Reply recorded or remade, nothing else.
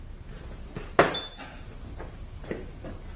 recorded